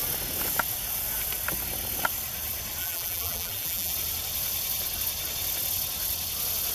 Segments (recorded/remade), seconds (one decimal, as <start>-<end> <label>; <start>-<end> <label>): 0.0-2.8 recorded; 2.8-3.9 remade; 3.9-6.7 recorded